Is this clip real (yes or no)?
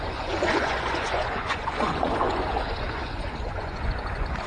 no